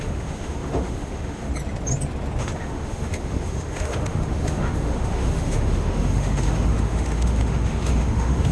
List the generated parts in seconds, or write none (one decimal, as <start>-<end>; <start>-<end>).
0.0-1.5; 2.4-8.5